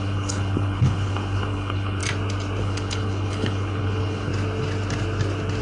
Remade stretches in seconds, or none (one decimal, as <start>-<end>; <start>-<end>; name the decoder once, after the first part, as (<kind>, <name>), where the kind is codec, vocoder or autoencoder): 0.0-2.0 (codec, HILCodec); 2.6-4.3